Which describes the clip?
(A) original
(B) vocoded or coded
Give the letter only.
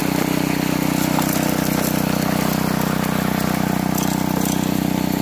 A